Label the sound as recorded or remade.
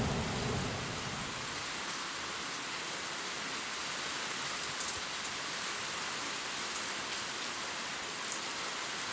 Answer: recorded